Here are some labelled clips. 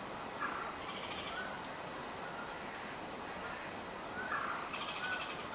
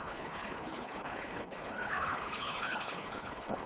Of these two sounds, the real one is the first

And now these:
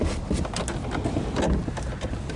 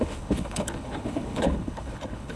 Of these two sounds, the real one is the first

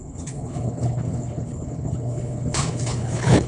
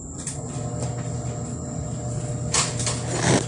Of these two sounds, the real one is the second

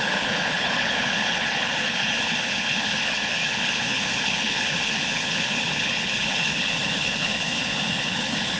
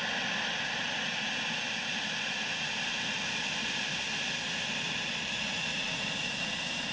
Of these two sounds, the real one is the second